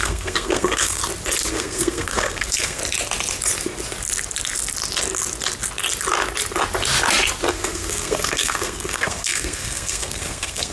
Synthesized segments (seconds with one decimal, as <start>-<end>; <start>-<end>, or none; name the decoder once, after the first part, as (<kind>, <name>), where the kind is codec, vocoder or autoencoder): 0.0-1.0 (codec, SNAC); 1.5-2.8; 7.5-10.7